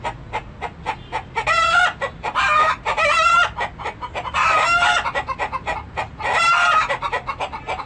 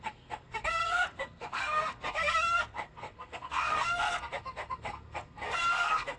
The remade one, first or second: second